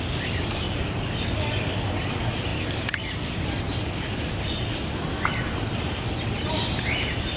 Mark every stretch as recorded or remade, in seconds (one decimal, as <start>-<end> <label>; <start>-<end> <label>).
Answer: 0.0-7.4 recorded